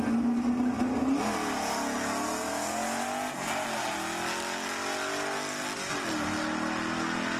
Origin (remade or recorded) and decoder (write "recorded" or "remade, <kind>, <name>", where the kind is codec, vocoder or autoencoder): recorded